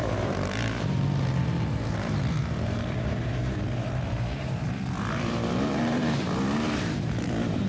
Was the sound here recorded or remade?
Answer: remade